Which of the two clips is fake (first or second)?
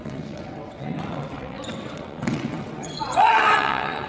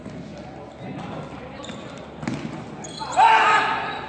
first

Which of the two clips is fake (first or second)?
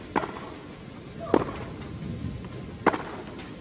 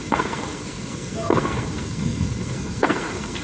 second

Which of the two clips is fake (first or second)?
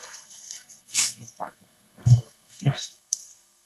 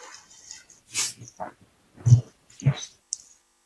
first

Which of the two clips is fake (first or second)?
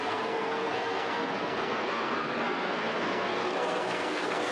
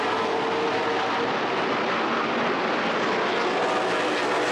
first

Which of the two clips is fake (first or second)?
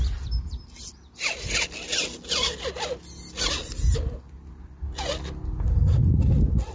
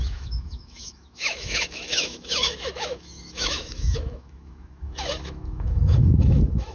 second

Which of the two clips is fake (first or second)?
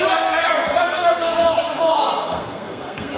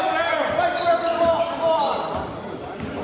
first